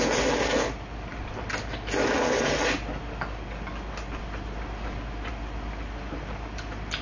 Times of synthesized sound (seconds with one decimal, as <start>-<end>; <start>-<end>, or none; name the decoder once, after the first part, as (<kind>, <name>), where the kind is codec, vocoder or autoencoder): none